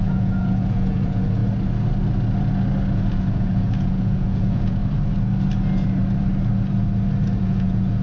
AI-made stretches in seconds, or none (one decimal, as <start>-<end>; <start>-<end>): 0.0-1.4; 2.9-4.8; 7.4-8.0